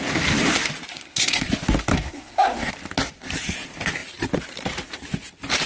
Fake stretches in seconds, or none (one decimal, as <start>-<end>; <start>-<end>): 0.9-1.5; 1.9-2.7